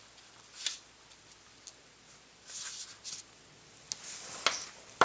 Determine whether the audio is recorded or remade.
recorded